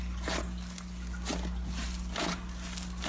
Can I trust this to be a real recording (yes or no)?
yes